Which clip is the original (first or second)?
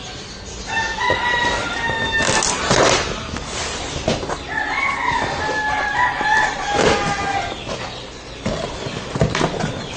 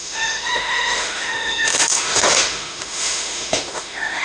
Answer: first